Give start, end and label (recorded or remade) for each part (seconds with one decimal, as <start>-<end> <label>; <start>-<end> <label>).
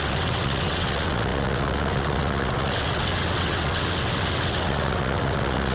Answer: 0.0-5.7 remade